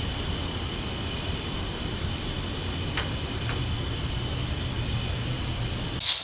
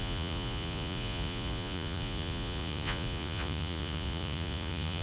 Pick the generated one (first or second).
second